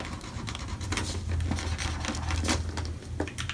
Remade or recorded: recorded